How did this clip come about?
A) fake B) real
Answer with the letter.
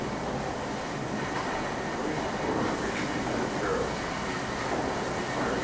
B